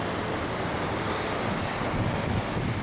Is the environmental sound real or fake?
real